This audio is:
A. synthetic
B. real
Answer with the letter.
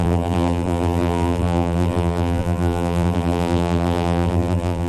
A